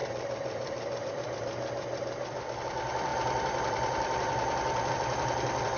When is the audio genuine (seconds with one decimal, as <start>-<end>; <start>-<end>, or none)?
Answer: none